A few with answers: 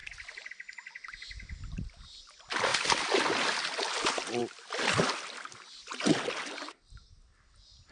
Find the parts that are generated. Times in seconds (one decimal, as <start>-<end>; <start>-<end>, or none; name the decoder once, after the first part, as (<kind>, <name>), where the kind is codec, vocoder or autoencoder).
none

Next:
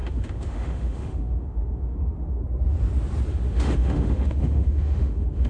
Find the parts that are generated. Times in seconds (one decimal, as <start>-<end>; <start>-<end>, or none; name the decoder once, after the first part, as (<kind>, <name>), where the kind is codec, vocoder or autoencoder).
0.0-2.4 (autoencoder, DAC-VAE); 3.3-5.5

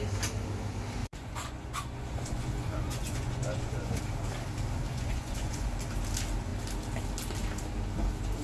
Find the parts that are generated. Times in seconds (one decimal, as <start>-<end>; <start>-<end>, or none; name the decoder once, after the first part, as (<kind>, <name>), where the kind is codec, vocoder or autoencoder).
1.0-4.0 (vocoder, Vocos); 4.9-5.7

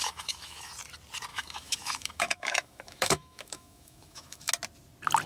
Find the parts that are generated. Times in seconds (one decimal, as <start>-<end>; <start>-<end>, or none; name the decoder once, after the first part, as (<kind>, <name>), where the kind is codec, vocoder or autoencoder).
0.0-0.7 (autoencoder, DAC-VAE); 1.3-4.5